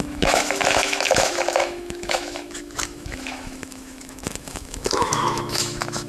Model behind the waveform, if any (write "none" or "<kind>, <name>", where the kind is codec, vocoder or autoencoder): autoencoder, DAC-VAE